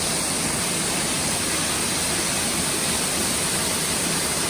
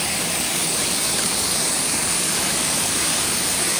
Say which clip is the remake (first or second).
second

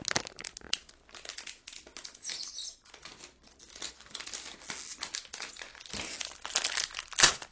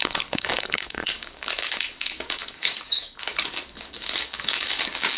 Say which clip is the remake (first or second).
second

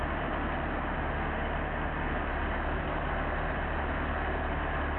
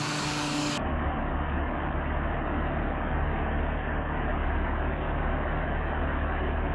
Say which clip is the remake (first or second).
second